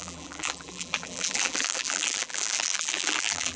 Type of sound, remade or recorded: remade